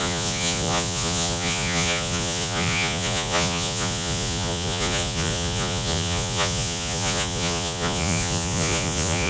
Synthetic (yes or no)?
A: yes